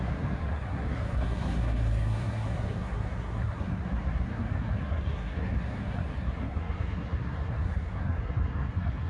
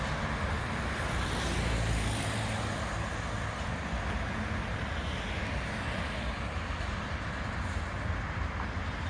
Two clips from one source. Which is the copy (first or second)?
first